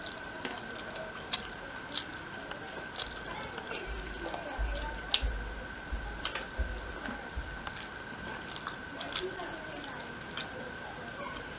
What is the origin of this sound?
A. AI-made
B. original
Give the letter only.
B